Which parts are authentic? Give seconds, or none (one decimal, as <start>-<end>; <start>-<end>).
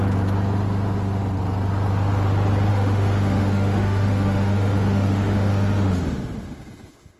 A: 0.0-2.7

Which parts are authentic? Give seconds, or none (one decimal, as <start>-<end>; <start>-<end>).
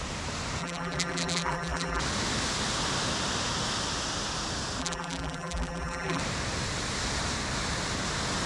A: 0.0-0.6; 2.0-4.8; 6.2-8.5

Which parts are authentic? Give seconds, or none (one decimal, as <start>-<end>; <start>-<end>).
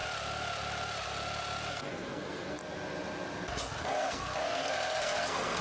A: 0.0-1.7; 2.6-3.8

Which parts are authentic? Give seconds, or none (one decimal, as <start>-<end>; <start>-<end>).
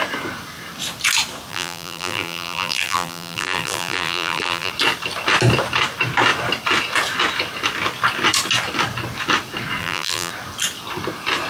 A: 0.0-1.5; 4.7-9.8; 10.3-11.5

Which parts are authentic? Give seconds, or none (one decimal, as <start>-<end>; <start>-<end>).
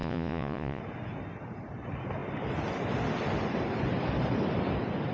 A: 0.8-5.1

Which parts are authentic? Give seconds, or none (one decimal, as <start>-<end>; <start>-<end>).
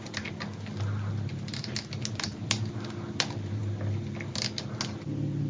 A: 0.0-5.5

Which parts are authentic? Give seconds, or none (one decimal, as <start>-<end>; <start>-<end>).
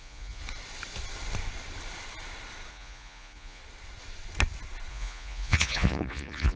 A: 0.4-2.7; 3.6-4.9